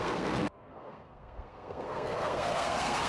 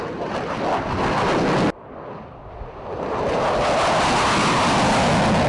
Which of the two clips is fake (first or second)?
first